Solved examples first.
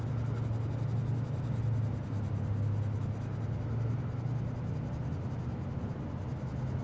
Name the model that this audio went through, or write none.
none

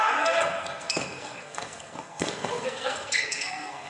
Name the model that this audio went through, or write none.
codec, SNAC